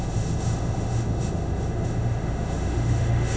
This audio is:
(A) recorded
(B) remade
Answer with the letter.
B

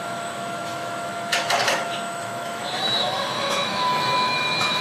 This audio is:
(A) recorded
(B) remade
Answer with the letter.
B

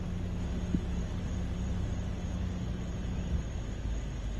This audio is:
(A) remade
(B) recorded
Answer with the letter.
B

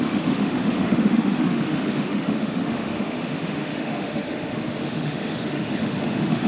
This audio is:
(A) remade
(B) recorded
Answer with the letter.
A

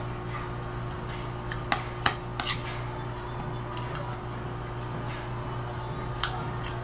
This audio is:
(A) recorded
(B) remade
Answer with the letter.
A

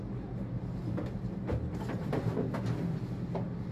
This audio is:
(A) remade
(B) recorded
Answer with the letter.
B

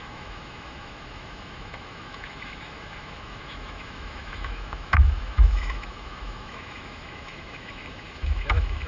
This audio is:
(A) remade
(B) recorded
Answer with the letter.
A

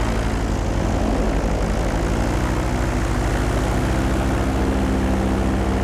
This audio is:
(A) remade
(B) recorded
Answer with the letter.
B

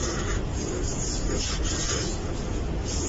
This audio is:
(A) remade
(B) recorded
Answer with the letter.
B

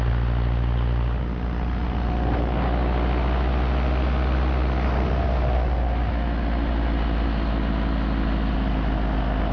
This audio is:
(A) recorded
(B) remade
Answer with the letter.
A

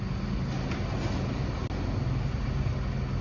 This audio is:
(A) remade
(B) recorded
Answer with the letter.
B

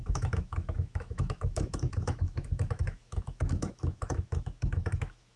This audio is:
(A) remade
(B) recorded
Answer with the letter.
A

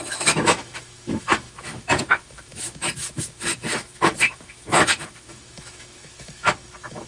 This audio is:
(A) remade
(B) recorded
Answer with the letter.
A